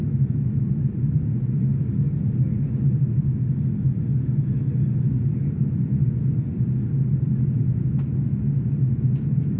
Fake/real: real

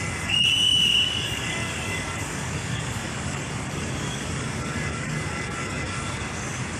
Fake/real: fake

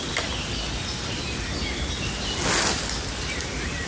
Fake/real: real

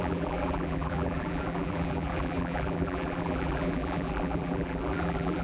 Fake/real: fake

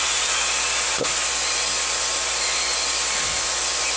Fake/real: real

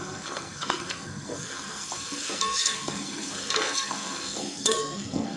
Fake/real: fake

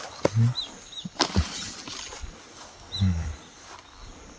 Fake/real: real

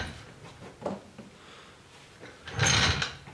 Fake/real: real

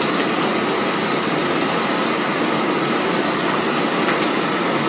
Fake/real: real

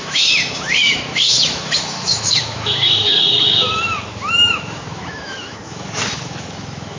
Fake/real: fake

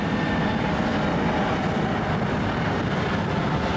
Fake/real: real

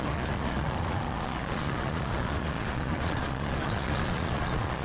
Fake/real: fake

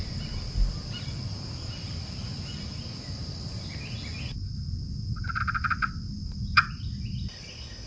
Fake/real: real